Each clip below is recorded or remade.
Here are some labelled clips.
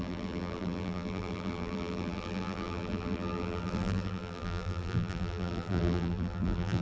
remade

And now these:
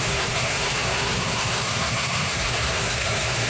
remade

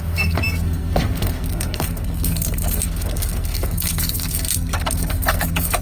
remade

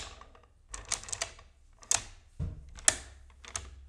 recorded